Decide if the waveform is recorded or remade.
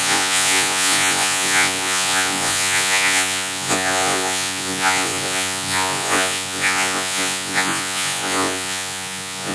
remade